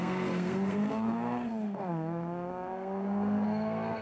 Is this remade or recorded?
remade